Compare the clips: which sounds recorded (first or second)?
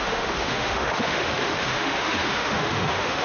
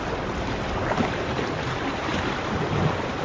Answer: second